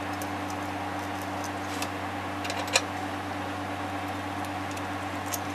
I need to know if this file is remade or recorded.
recorded